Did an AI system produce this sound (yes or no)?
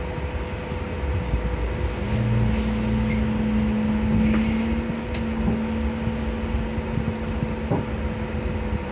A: no